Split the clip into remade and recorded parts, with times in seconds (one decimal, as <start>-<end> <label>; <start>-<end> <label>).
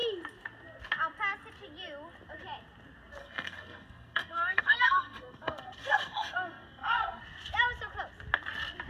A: 0.0-3.2 recorded; 3.2-7.2 remade; 7.2-8.9 recorded